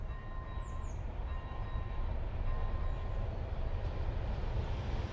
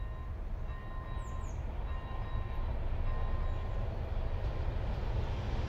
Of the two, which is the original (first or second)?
second